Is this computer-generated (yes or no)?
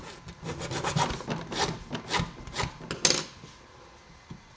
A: no